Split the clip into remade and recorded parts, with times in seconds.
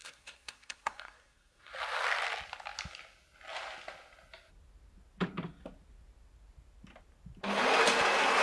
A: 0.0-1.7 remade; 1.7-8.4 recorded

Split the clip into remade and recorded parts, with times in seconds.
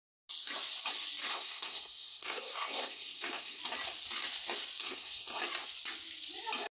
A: 0.0-1.3 recorded; 1.3-3.6 remade; 3.6-4.8 recorded; 4.8-5.4 remade; 5.4-6.8 recorded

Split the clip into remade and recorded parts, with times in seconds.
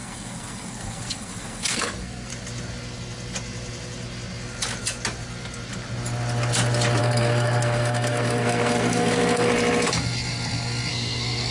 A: 0.0-2.3 remade; 2.3-7.0 recorded; 7.0-9.5 remade; 9.5-10.9 recorded; 10.9-11.5 remade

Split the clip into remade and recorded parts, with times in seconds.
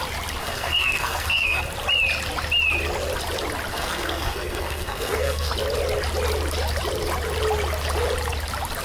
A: 0.0-0.4 recorded; 0.4-1.6 remade; 1.6-3.7 recorded; 3.7-5.5 remade; 5.5-8.8 recorded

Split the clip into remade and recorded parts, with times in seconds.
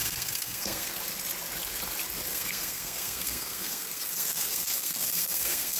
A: 0.0-0.9 remade; 0.9-2.3 recorded; 2.3-5.8 remade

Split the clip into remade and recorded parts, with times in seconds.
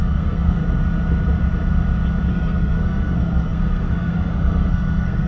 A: 0.0-0.6 remade; 0.6-2.3 recorded; 2.3-5.3 remade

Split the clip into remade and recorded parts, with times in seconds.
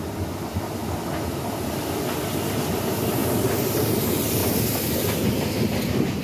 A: 0.0-6.2 recorded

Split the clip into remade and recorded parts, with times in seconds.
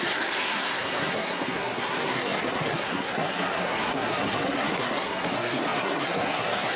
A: 0.0-6.8 remade